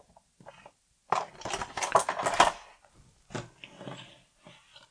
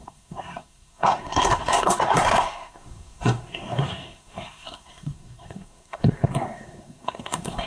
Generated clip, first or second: second